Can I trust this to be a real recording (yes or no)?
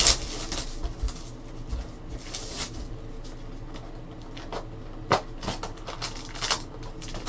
yes